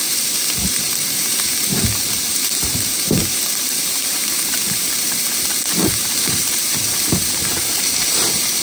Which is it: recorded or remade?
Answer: remade